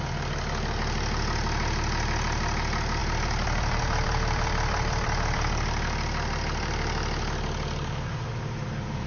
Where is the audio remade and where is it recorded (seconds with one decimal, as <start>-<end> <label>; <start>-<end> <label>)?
0.0-3.0 recorded; 3.0-8.3 remade; 8.3-9.1 recorded